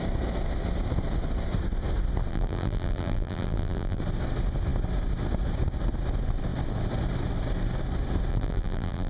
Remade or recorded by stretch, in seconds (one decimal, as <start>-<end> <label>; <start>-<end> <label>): 0.0-2.3 recorded; 2.3-4.0 remade; 4.0-8.3 recorded; 8.3-9.1 remade

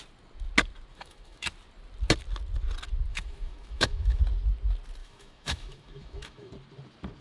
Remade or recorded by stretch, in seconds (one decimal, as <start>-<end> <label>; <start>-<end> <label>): 0.0-0.9 recorded; 0.9-1.5 remade; 1.5-3.1 recorded; 3.1-4.2 remade; 4.2-5.0 recorded; 5.0-6.5 remade; 6.5-7.2 recorded